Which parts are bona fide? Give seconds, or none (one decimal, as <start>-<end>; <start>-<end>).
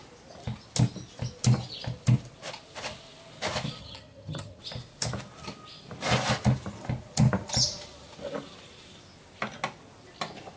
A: 0.0-3.8; 4.6-10.6